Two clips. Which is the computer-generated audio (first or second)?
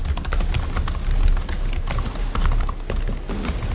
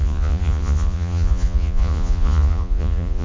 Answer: second